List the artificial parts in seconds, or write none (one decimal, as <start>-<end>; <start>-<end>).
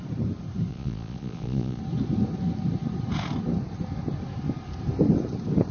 0.7-1.8